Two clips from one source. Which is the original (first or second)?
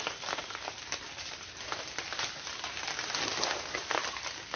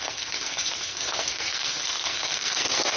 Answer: first